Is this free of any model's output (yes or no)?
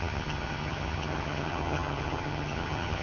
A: no